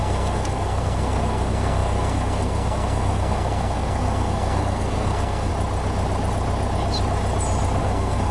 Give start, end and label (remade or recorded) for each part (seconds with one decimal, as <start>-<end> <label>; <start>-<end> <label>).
0.0-5.5 remade; 5.5-7.8 recorded; 7.8-8.3 remade